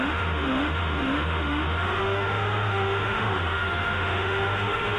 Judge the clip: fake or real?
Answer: fake